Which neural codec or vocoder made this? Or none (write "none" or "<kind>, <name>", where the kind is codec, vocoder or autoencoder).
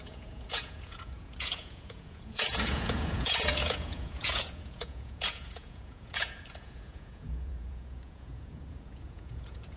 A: vocoder, Vocos